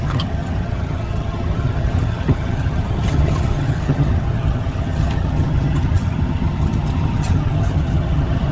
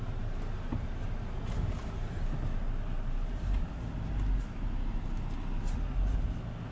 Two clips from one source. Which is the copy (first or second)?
first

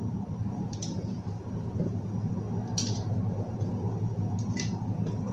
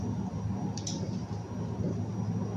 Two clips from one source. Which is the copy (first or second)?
first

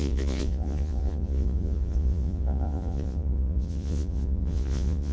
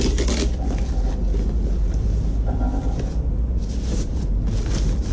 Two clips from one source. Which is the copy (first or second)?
first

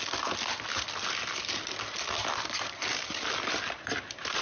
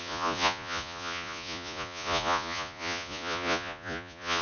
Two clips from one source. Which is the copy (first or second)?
second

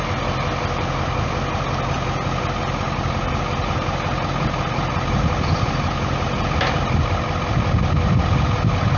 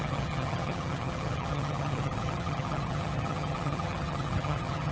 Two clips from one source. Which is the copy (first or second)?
second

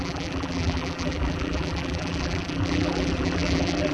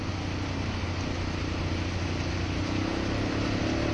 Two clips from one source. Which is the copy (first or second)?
first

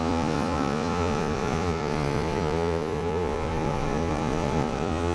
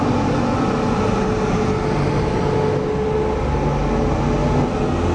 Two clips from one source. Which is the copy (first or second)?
first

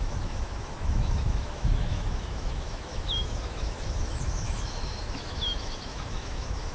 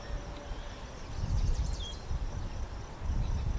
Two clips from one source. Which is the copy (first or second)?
first